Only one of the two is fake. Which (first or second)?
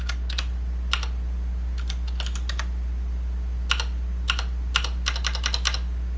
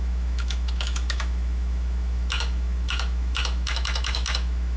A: second